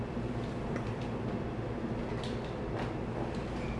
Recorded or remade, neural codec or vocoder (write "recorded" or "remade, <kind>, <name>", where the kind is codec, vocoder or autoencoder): recorded